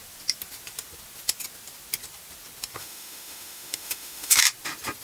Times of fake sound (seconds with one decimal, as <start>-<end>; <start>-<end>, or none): 2.8-4.4